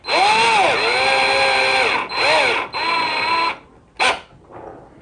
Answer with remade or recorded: recorded